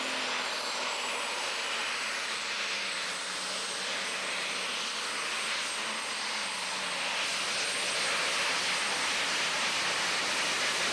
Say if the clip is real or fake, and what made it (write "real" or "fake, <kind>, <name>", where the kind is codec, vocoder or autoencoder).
real